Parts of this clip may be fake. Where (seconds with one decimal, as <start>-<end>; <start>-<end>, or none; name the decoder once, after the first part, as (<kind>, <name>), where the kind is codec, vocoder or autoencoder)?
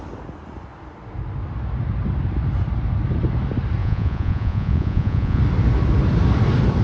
3.8-5.4 (vocoder, Vocos)